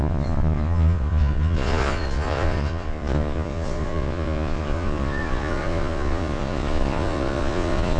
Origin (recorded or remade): remade